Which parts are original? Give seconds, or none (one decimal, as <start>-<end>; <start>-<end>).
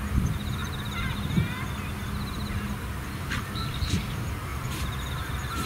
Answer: 0.6-4.0